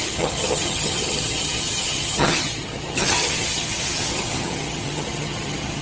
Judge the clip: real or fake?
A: fake